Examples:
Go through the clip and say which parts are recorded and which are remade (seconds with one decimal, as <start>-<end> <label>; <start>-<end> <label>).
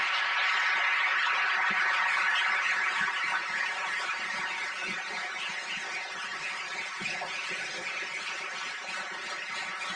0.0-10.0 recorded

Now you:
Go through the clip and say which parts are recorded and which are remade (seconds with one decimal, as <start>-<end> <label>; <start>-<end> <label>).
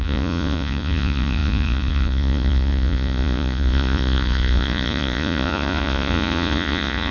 0.0-7.1 remade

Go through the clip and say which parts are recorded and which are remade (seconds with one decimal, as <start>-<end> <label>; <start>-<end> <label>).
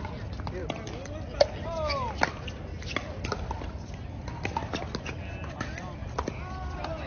0.0-7.1 recorded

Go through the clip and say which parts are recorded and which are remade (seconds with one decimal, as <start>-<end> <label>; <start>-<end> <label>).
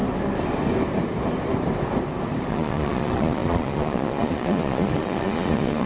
0.0-2.5 recorded; 2.5-5.9 remade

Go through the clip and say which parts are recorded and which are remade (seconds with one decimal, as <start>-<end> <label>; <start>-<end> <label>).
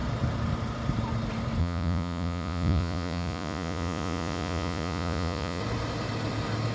0.0-1.6 recorded; 1.6-5.6 remade; 5.6-6.7 recorded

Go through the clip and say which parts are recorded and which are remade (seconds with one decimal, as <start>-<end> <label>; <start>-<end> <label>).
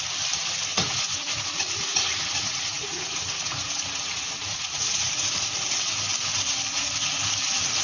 0.0-0.7 recorded; 0.7-5.1 remade; 5.1-7.8 recorded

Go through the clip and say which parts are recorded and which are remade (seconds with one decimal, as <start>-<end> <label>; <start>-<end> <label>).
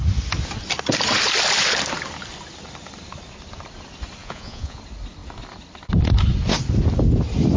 0.0-4.2 recorded; 4.2-4.8 remade; 4.8-7.6 recorded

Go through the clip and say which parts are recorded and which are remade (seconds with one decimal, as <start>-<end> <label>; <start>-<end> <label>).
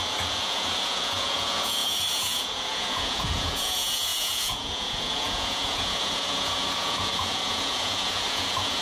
0.0-8.8 remade